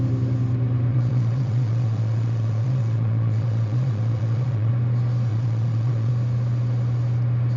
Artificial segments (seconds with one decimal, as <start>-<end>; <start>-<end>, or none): 0.9-4.7; 5.3-6.1